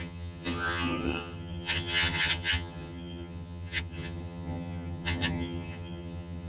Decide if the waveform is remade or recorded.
remade